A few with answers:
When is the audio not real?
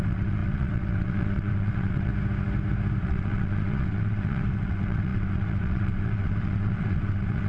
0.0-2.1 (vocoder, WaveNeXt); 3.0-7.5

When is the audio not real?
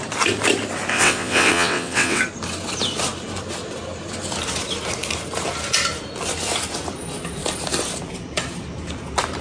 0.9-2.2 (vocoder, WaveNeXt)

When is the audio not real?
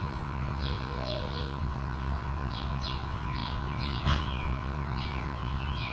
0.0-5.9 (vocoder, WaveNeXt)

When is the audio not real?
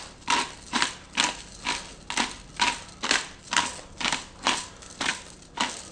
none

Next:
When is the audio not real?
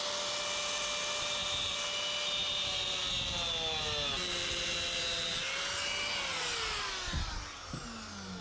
none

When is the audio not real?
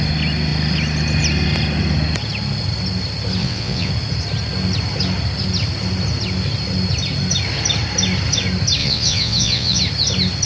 3.4-3.9 (vocoder, WaveNeXt); 8.8-9.8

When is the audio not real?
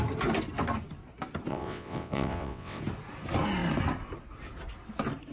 1.5-2.8 (vocoder, WaveNeXt)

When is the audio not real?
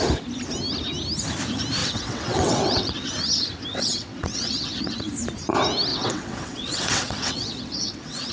1.8-3.1 (vocoder, WaveNeXt); 3.7-5.1; 5.9-8.3